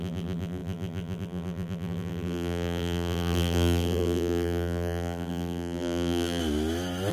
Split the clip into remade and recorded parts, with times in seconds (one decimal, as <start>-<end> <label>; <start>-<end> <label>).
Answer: 0.0-6.4 remade; 6.4-7.1 recorded